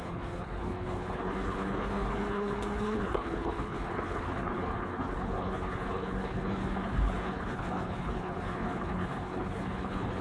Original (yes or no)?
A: no